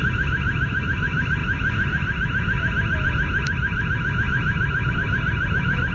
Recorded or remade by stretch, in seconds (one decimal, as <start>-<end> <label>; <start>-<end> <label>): 0.0-1.4 remade; 1.4-4.9 recorded; 4.9-5.9 remade